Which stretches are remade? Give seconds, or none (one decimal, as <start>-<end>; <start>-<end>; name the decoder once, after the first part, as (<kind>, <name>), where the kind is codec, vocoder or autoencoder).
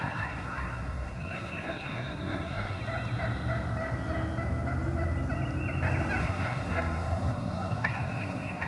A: 0.0-2.8 (codec, SNAC); 6.2-8.7